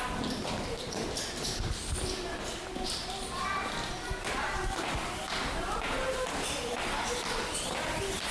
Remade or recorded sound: recorded